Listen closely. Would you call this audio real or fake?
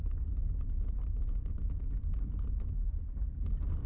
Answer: real